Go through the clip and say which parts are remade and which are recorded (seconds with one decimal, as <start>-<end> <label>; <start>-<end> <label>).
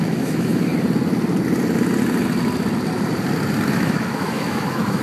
0.0-0.7 remade; 0.7-3.7 recorded; 3.7-5.0 remade